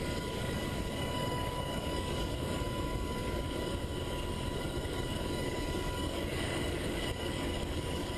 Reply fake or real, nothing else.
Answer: fake